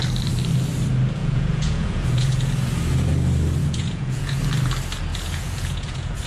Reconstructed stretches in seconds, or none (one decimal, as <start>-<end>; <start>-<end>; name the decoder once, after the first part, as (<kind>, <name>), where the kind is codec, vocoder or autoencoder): 1.2-2.5 (vocoder, Vocos); 3.6-4.4; 5.1-6.3